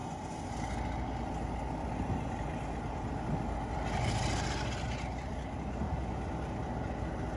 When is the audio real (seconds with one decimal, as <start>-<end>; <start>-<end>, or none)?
0.0-7.4